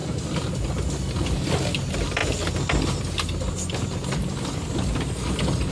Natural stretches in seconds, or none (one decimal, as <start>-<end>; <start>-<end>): 0.0-5.7